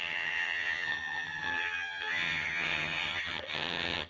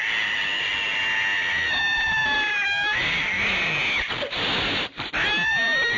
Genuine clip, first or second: second